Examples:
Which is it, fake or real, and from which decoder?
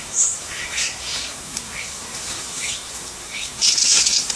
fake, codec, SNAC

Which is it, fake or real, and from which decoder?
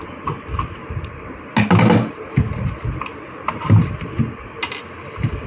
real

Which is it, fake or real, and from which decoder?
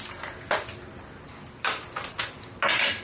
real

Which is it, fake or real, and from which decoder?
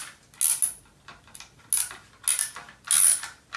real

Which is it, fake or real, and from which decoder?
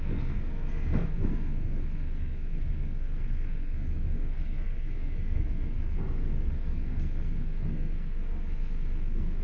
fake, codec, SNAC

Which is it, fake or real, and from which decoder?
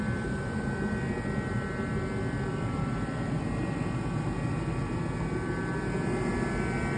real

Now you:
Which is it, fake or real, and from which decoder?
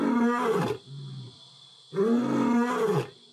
real